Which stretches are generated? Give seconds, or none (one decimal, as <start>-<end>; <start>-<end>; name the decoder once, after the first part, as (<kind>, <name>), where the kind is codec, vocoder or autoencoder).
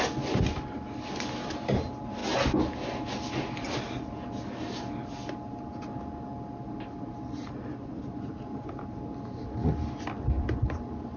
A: none